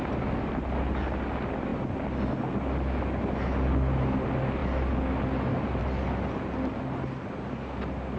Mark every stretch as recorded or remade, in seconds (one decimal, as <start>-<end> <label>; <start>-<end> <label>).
0.0-8.2 recorded